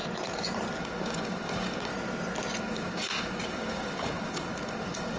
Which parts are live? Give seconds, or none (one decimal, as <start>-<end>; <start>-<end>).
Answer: 0.0-0.8; 1.9-2.6